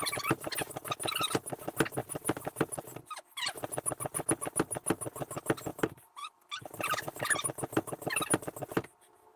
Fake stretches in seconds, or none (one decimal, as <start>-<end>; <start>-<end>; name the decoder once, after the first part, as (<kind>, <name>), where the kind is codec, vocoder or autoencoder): 2.0-4.3 (vocoder, BigVGAN v2); 5.7-8.4